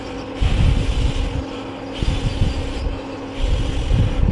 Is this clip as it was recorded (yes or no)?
yes